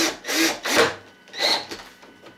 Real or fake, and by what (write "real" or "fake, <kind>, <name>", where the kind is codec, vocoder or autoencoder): real